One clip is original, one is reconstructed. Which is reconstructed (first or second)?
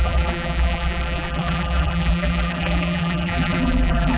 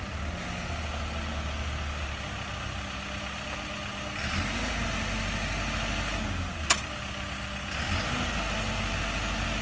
first